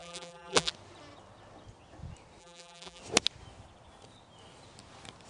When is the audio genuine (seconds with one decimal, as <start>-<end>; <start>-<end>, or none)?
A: 0.7-2.4; 3.0-5.3